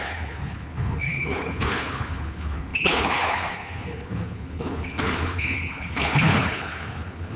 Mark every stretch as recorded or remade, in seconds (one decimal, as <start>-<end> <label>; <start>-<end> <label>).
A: 0.0-7.4 remade